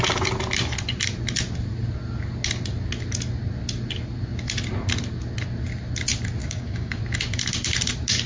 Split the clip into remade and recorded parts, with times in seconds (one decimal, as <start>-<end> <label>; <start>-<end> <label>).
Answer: 0.0-6.4 recorded; 6.4-7.0 remade; 7.0-8.3 recorded